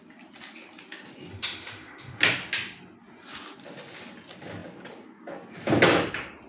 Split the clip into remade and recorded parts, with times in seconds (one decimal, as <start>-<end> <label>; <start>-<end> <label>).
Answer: 0.0-1.3 recorded; 1.3-2.2 remade; 2.2-6.5 recorded